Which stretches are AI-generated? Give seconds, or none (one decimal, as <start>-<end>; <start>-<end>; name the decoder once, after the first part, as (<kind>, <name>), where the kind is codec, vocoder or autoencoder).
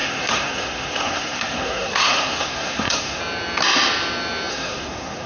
0.0-3.2 (codec, SNAC); 4.5-5.3